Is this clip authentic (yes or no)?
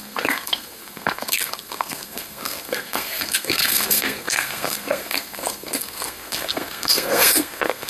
no